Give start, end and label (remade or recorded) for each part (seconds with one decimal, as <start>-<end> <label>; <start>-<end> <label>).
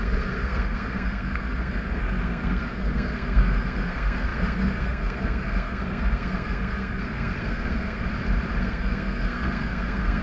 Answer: 0.0-8.0 remade; 8.0-8.6 recorded; 8.6-10.2 remade